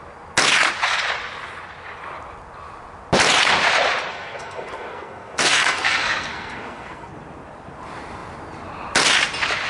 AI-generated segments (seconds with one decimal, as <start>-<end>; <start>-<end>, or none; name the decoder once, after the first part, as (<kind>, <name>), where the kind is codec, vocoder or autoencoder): 4.1-7.1 (codec, SNAC)